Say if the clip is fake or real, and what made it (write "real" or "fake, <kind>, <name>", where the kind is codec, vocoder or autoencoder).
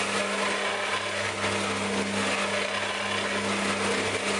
real